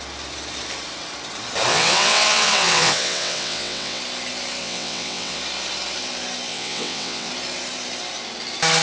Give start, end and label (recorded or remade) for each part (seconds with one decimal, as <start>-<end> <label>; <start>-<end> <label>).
0.0-1.7 recorded; 1.7-4.0 remade; 4.0-4.6 recorded; 4.6-5.4 remade; 5.4-6.5 recorded; 6.5-7.3 remade; 7.3-8.8 recorded